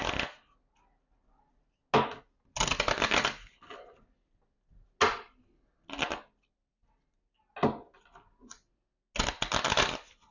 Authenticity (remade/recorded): recorded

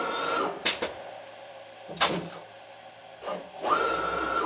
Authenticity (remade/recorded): recorded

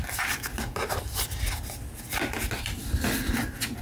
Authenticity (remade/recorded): recorded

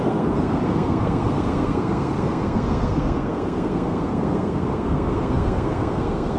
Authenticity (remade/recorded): remade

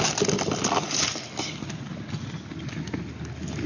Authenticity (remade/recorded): recorded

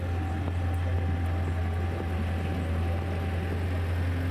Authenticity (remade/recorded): recorded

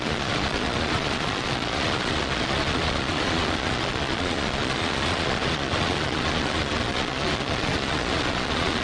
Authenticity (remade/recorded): remade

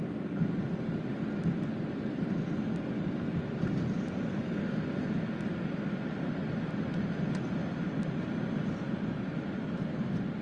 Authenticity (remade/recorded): recorded